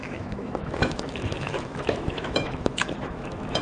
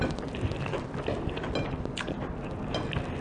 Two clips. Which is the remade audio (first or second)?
first